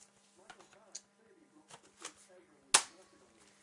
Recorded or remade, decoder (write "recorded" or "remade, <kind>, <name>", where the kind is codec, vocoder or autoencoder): recorded